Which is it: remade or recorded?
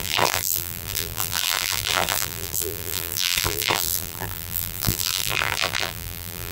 remade